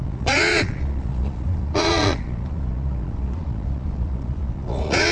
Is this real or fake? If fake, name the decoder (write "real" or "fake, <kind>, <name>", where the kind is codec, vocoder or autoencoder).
fake, vocoder, Vocos